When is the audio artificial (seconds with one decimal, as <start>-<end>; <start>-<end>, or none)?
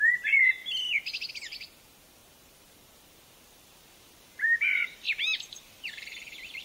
0.0-0.6; 1.3-6.6